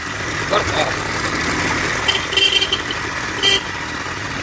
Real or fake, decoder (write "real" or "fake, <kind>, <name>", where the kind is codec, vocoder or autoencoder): real